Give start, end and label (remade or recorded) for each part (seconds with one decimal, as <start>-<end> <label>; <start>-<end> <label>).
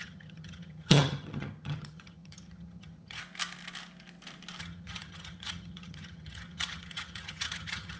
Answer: 0.0-3.2 remade; 3.2-4.6 recorded; 4.6-8.0 remade